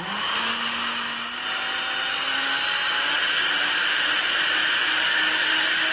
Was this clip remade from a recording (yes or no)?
no